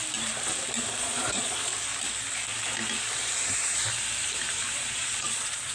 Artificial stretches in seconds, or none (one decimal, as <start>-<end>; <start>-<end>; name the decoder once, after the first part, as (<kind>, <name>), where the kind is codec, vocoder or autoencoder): 1.0-1.7 (vocoder, Vocos); 4.7-5.7